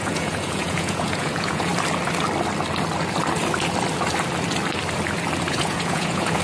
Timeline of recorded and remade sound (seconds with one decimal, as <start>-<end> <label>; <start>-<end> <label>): 0.0-1.7 remade; 1.7-5.5 recorded; 5.5-6.4 remade